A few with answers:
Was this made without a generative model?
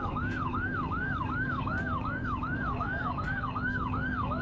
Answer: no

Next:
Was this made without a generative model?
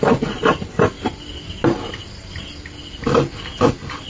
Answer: yes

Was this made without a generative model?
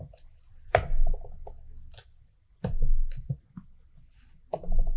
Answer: yes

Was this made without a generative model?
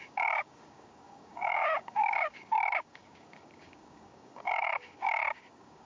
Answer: no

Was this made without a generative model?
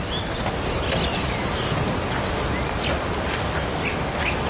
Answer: yes